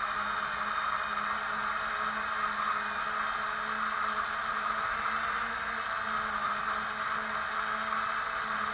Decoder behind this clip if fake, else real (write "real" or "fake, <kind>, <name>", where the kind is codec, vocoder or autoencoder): real